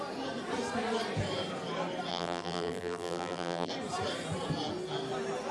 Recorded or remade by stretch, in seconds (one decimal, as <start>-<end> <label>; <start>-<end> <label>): 0.0-2.1 recorded; 2.1-3.7 remade; 3.7-5.5 recorded